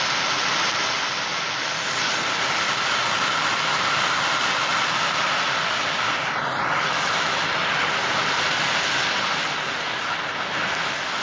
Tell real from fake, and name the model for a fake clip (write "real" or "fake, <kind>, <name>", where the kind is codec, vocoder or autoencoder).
real